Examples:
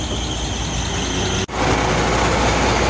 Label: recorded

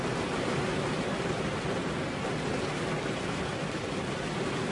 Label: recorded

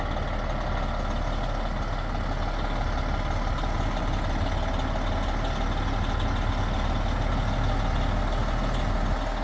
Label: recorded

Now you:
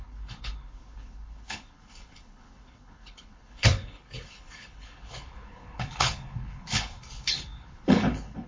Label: remade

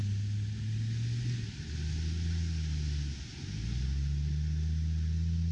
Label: recorded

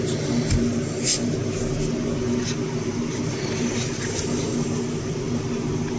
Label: recorded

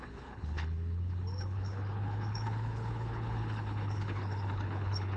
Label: remade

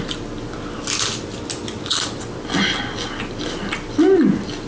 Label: recorded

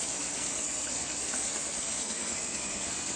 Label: remade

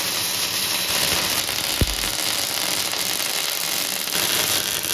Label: remade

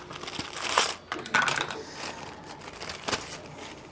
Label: recorded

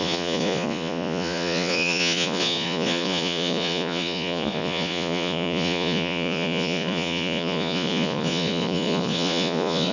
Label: remade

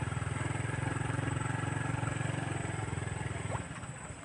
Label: recorded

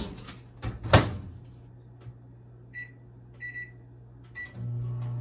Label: recorded